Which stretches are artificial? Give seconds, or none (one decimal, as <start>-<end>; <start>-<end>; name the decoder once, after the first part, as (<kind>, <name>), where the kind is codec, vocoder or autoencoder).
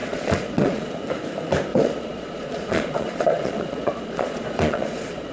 0.0-0.9 (vocoder, Vocos); 1.7-5.3